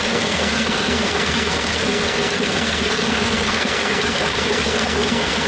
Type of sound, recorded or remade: remade